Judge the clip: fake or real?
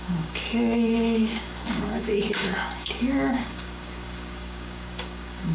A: fake